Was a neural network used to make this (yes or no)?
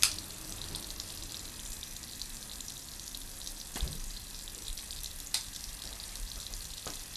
yes